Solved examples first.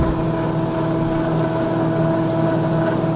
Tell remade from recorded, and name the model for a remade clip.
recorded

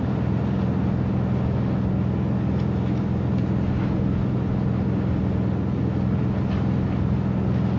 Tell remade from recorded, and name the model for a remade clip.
recorded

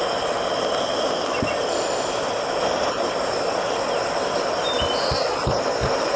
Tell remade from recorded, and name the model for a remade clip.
recorded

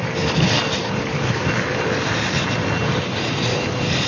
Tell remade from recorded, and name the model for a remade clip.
recorded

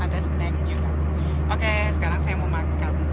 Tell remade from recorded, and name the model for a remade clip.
recorded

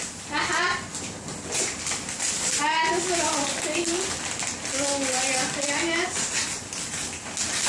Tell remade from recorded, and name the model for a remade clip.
recorded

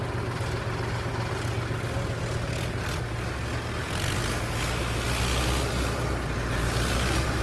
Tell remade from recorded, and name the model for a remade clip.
recorded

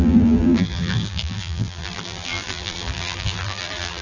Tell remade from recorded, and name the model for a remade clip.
remade, vocoder, BigVGAN v2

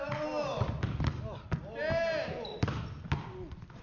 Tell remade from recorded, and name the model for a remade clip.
recorded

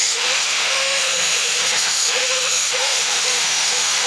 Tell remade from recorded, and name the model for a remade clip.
remade, autoencoder, DAC-VAE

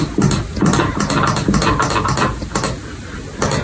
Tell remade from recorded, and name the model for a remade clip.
recorded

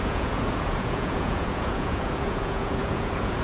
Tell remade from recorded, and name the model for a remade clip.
remade, vocoder, Vocos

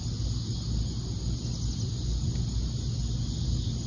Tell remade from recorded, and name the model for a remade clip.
recorded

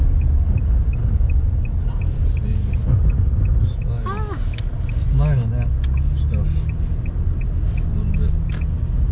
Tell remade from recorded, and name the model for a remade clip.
recorded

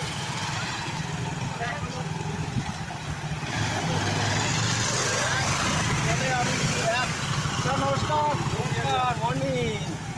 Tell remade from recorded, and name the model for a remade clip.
recorded